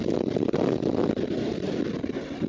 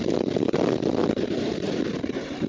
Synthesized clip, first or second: second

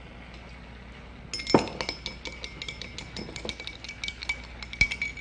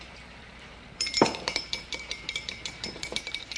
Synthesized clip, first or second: second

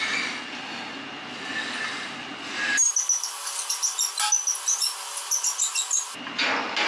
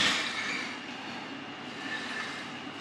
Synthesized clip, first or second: second